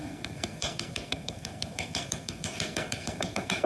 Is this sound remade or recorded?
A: remade